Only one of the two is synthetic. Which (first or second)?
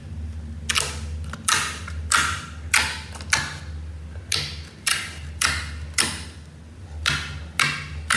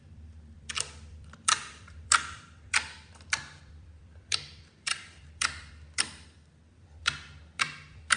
second